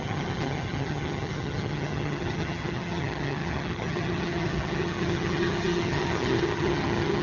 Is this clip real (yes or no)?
no